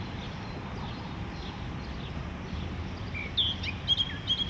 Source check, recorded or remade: recorded